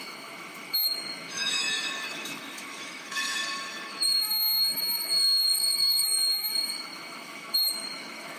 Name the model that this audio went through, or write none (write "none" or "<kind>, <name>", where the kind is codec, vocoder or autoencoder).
autoencoder, DAC-VAE